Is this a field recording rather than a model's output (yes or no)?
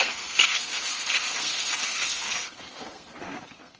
no